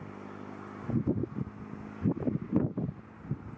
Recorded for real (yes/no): yes